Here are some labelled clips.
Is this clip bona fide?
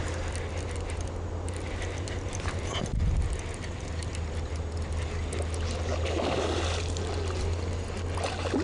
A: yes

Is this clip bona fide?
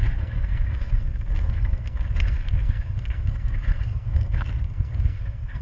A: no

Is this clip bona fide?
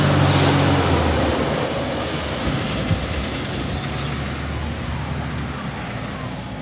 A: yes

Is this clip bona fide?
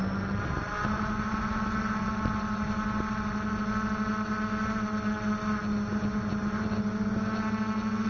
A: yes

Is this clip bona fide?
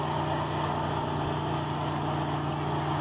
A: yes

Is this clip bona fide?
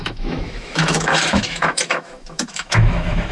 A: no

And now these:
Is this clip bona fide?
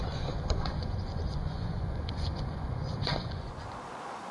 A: no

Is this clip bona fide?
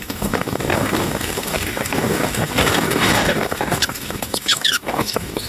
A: no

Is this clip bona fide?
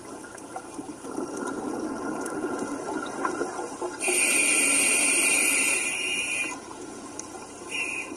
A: yes